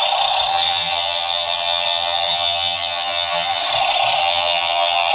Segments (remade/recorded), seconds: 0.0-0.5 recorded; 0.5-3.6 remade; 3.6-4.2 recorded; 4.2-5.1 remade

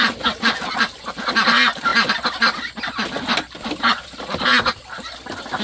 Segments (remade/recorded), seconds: 0.0-5.6 recorded

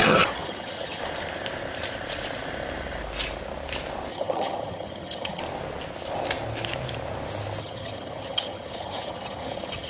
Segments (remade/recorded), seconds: 0.0-1.0 remade; 1.0-4.1 recorded; 4.1-5.4 remade; 5.4-7.6 recorded; 7.6-9.9 remade

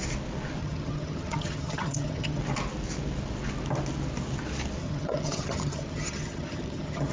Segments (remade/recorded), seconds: 0.0-0.6 recorded; 0.6-2.4 remade; 2.4-4.8 recorded; 4.8-7.1 remade

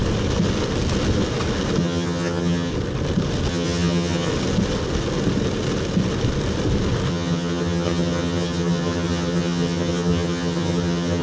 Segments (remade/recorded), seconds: 0.0-1.8 recorded; 1.8-2.7 remade; 2.7-3.5 recorded; 3.5-4.3 remade; 4.3-7.1 recorded; 7.1-11.2 remade